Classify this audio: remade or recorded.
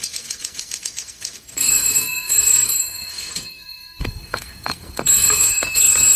remade